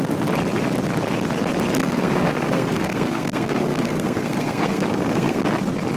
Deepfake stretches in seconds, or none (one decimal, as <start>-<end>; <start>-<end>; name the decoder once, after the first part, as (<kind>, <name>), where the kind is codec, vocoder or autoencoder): 1.8-5.4 (codec, SNAC)